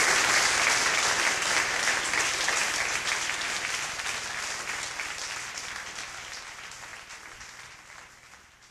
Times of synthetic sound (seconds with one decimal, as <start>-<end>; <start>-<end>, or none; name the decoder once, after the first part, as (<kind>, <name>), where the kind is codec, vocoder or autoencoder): 0.0-1.2 (vocoder, BigVGAN v2)